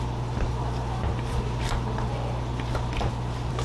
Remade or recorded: recorded